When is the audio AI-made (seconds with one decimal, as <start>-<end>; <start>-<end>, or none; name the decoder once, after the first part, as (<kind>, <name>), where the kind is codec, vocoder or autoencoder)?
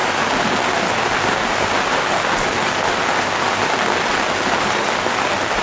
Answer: none